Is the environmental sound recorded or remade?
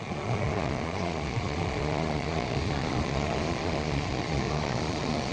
remade